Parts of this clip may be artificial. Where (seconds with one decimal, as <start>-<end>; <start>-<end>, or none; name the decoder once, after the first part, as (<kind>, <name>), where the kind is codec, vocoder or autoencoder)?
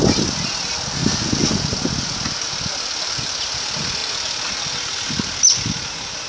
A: none